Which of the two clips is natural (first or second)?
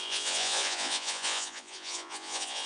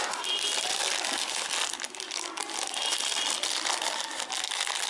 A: second